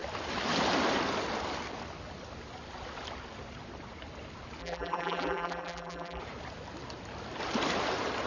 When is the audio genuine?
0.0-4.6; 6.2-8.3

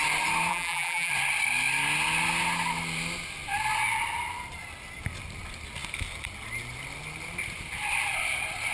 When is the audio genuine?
0.0-0.5; 1.1-8.7

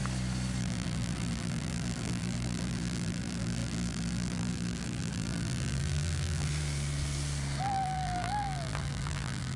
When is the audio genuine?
0.0-0.6; 6.5-7.6

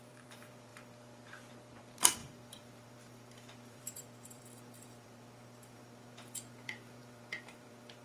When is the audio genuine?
none